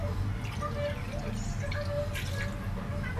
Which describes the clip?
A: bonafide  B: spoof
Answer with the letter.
A